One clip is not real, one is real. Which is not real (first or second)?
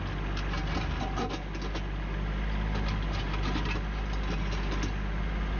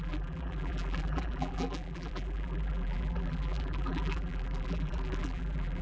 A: second